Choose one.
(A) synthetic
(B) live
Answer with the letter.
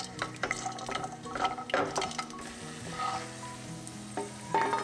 B